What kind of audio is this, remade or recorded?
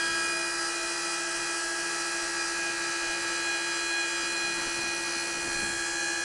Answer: recorded